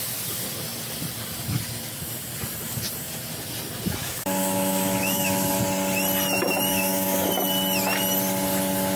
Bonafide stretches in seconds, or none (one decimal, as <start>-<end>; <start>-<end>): 0.0-4.0; 5.6-6.7; 7.3-9.0